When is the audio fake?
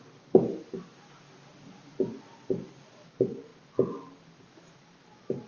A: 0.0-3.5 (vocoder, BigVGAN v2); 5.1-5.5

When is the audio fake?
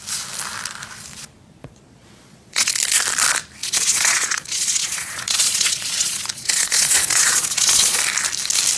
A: 1.6-2.7 (vocoder, Vocos); 3.6-8.0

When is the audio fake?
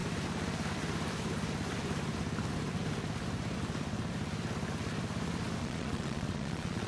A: 5.6-6.9 (vocoder, Vocos)